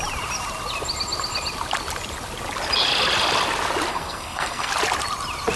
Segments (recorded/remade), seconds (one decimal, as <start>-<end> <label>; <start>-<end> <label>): 0.0-3.9 recorded; 3.9-4.7 remade; 4.7-5.6 recorded